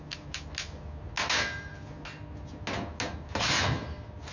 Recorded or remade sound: recorded